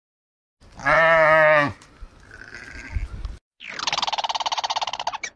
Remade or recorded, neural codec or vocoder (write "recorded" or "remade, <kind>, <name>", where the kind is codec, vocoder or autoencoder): recorded